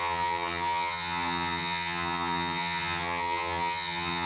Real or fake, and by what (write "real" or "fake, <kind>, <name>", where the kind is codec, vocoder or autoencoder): fake, vocoder, HiFi-GAN